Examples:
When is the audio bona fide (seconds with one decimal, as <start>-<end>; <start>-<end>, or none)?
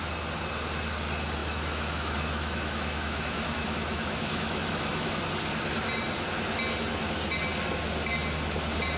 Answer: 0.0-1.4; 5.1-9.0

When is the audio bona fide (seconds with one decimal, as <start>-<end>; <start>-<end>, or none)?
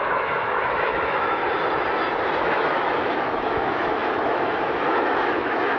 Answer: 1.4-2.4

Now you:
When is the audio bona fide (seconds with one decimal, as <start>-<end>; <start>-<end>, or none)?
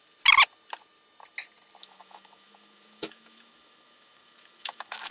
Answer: 0.0-1.8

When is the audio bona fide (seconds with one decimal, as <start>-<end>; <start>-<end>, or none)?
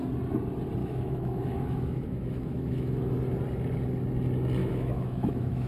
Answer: 0.0-0.8; 3.1-4.6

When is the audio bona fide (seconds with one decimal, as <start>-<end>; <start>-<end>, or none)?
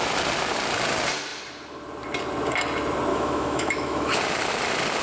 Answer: 0.0-3.1; 4.2-5.0